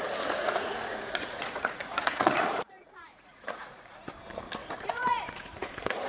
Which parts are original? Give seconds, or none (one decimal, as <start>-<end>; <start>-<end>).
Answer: 0.0-0.4; 4.1-4.6